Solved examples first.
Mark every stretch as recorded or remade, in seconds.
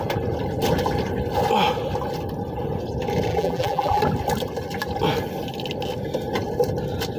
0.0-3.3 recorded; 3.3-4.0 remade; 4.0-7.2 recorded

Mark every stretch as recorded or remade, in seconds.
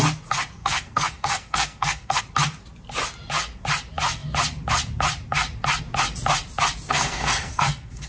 0.0-0.6 recorded; 0.6-2.2 remade; 2.2-6.9 recorded; 6.9-8.1 remade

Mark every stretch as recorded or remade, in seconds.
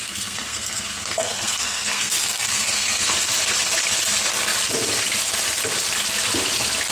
0.0-3.1 remade; 3.1-6.9 recorded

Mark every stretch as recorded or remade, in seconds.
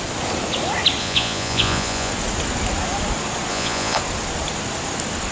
0.0-1.0 recorded; 1.0-2.1 remade; 2.1-3.5 recorded; 3.5-4.0 remade; 4.0-5.3 recorded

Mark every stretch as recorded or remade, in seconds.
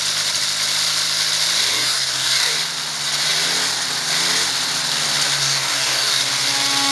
0.0-1.7 recorded; 1.7-2.5 remade; 2.5-5.4 recorded; 5.4-6.2 remade; 6.2-6.9 recorded